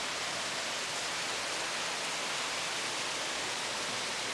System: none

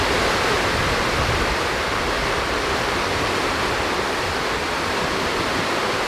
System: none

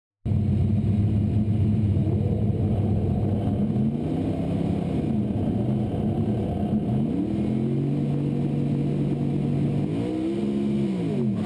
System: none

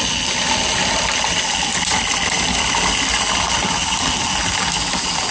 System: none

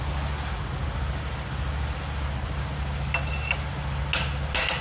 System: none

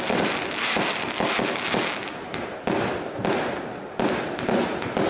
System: none